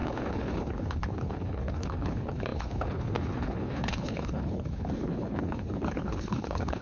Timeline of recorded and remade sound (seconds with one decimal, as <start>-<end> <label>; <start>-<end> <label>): 0.0-6.8 remade